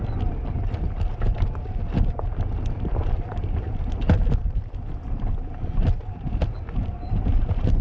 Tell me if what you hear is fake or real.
real